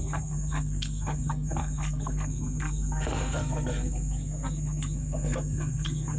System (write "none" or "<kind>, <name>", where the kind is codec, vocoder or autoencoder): codec, SNAC